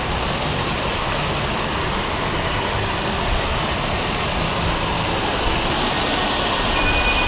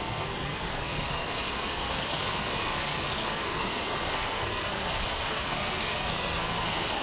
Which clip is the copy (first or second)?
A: second